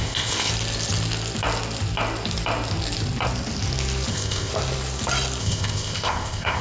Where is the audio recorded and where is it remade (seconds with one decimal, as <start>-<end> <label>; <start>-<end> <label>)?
0.0-0.5 remade; 0.5-4.1 recorded; 4.1-4.5 remade; 4.5-5.4 recorded; 5.4-6.6 remade